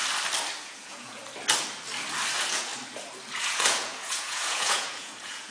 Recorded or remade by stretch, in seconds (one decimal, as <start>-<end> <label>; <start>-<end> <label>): 0.0-0.6 recorded; 0.6-1.2 remade; 1.2-2.3 recorded; 2.3-2.7 remade; 2.7-3.3 recorded; 3.3-5.5 remade